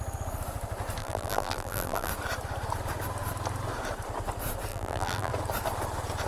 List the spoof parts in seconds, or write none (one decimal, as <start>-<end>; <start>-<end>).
1.0-2.1; 4.7-5.3